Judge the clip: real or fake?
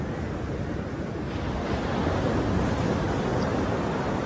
real